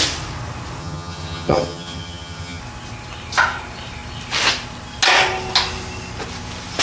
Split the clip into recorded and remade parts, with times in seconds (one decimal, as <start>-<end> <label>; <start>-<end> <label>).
0.0-0.8 recorded; 0.8-2.6 remade; 2.6-6.8 recorded